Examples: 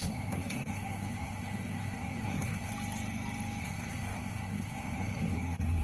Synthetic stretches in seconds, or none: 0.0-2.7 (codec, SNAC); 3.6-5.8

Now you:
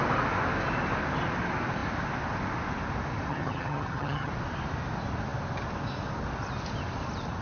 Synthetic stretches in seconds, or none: 3.3-4.3 (vocoder, HiFi-GAN)

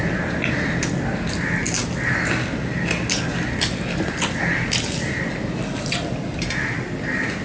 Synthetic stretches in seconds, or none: none

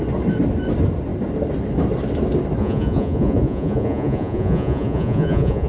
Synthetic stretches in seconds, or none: 2.6-5.7 (vocoder, Vocos)

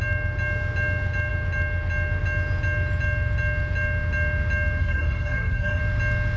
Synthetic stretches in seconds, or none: 4.8-5.8 (codec, DAC)

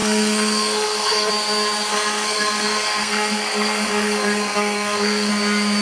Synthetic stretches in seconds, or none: 0.0-1.3 (codec, SNAC); 1.9-5.3

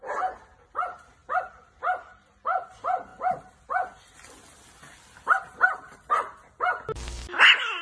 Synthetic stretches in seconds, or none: none

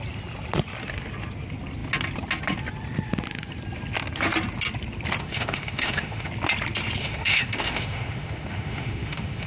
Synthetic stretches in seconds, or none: 5.2-6.3 (autoencoder, DAC-VAE); 7.0-9.5